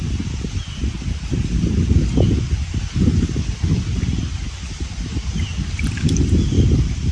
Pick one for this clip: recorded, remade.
recorded